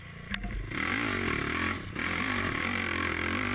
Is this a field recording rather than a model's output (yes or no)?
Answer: yes